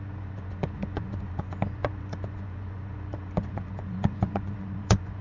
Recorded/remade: remade